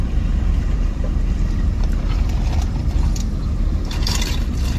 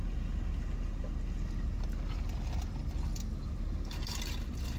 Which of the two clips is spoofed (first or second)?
first